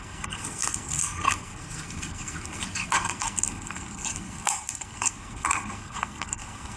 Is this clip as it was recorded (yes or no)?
no